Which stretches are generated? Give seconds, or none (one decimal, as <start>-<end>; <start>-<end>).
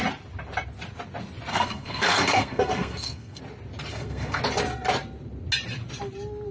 1.5-3.4; 3.9-4.4